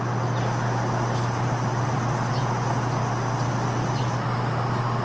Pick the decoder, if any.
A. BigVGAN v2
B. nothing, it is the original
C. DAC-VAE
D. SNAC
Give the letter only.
B